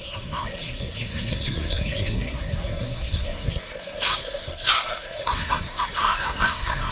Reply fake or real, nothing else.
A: fake